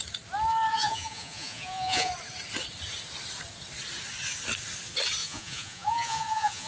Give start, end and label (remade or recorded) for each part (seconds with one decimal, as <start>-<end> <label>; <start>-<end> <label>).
0.0-0.7 recorded; 0.7-2.1 remade; 2.1-5.2 recorded; 5.2-6.7 remade